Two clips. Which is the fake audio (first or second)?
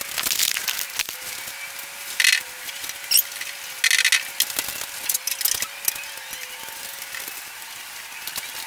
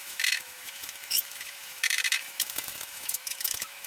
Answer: second